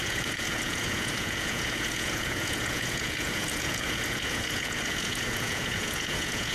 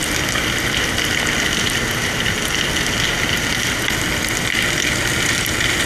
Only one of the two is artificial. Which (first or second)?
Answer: first